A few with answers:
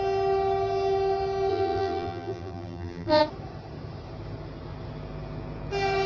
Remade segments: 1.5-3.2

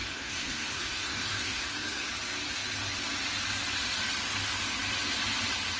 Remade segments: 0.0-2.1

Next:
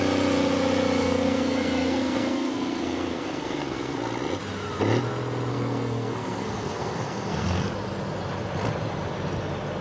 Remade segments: 1.0-4.0; 5.5-7.7

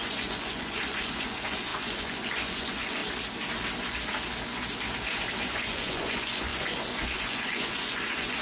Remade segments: 0.0-3.0; 5.4-8.4

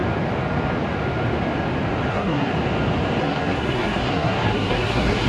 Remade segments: 2.1-2.5; 3.2-5.3

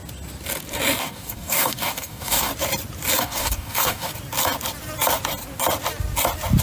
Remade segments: 1.0-2.5; 3.2-4.1